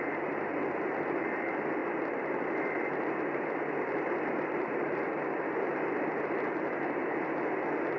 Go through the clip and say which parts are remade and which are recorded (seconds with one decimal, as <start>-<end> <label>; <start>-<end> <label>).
0.0-1.8 recorded; 1.8-6.6 remade; 6.6-8.0 recorded